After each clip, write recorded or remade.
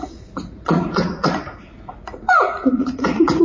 remade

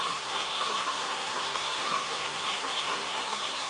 remade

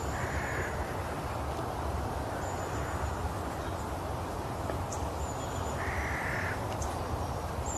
recorded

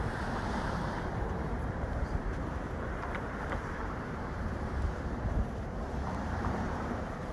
remade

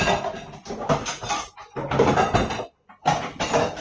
recorded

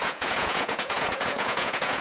remade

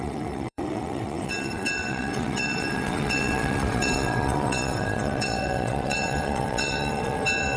remade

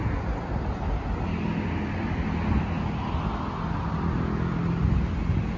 recorded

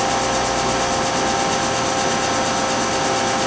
recorded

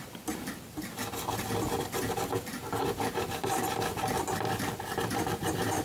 remade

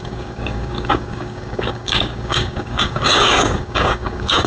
remade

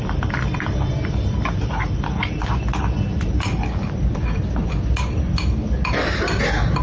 recorded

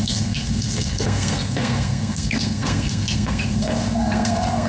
remade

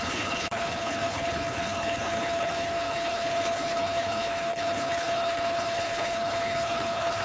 remade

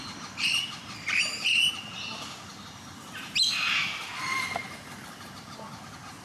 recorded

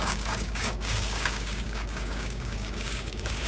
remade